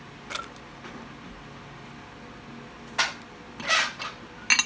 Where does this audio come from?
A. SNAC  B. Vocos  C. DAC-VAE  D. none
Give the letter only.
D